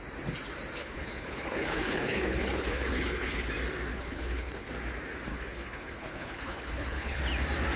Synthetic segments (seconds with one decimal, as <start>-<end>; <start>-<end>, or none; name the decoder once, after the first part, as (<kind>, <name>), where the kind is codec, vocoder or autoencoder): 0.8-3.5 (codec, HILCodec); 3.9-4.7; 5.3-7.2